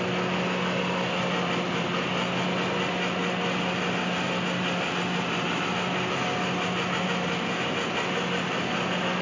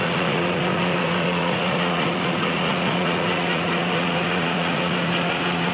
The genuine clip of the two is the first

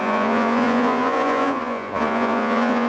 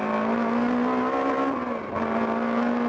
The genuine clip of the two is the second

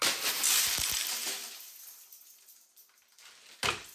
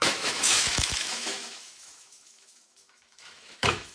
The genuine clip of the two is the first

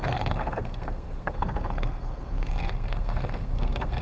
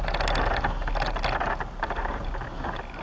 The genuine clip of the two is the second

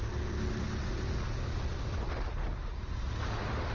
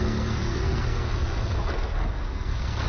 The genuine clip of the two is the first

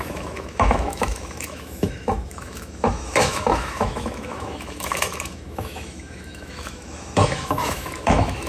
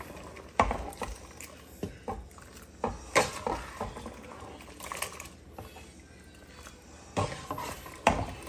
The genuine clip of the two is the second